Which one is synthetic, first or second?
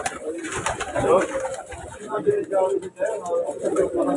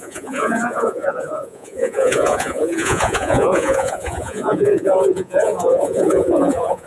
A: second